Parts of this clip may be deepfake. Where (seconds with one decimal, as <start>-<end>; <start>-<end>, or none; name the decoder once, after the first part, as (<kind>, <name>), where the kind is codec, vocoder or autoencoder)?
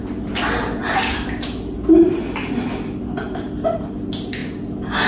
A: none